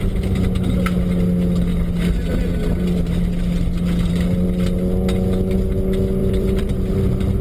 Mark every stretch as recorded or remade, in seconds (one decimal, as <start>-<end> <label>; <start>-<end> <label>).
0.0-6.2 recorded; 6.2-6.7 remade; 6.7-7.4 recorded

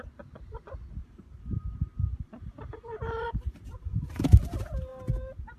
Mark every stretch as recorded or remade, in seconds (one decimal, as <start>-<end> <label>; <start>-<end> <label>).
0.0-1.0 recorded; 1.0-4.4 remade; 4.4-5.6 recorded

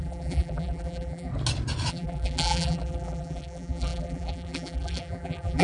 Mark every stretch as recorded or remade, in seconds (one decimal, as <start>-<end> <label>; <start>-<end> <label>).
0.0-1.3 remade; 1.3-1.9 recorded; 1.9-5.6 remade

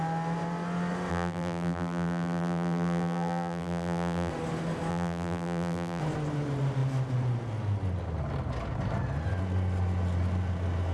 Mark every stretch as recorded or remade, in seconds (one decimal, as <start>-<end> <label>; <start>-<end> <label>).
0.0-1.1 recorded; 1.1-4.3 remade; 4.3-4.9 recorded; 4.9-6.0 remade; 6.0-10.9 recorded

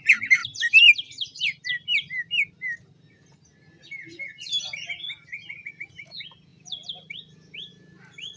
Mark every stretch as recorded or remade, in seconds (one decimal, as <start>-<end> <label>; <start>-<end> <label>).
0.0-0.4 recorded; 0.4-2.3 remade; 2.3-6.5 recorded; 6.5-7.7 remade; 7.7-8.4 recorded

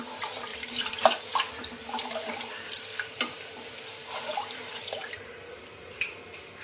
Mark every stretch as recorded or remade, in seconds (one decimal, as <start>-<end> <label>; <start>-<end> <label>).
0.0-0.5 recorded; 0.5-1.2 remade; 1.2-1.6 recorded; 1.6-2.3 remade; 2.3-2.9 recorded; 2.9-5.6 remade; 5.6-6.6 recorded

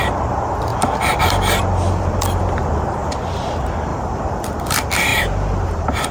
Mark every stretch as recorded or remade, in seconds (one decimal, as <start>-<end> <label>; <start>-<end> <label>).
0.0-0.7 recorded; 0.7-2.4 remade; 2.4-3.9 recorded; 3.9-4.6 remade; 4.6-6.1 recorded